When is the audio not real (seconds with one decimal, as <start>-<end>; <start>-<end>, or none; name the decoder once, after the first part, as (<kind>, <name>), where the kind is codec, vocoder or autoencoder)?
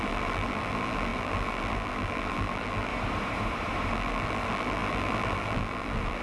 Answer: 0.0-2.9 (vocoder, BigVGAN v2); 3.9-6.2